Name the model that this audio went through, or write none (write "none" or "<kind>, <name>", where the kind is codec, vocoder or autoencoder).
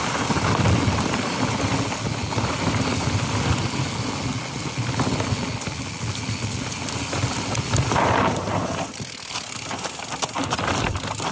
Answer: none